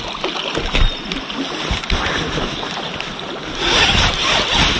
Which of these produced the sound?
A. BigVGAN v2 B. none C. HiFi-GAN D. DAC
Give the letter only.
B